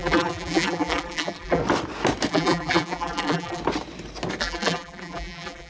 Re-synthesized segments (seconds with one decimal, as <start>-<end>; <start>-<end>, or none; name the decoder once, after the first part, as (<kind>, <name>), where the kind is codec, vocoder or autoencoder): 0.0-1.6 (vocoder, BigVGAN v2); 2.3-3.6; 4.4-5.7